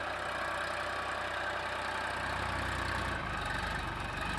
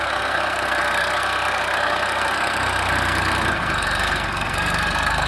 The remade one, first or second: second